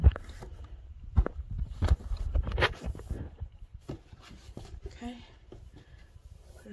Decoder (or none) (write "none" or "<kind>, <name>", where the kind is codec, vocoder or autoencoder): vocoder, BigVGAN v2